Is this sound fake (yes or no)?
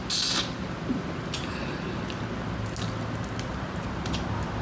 no